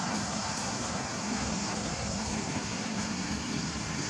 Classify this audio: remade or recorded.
remade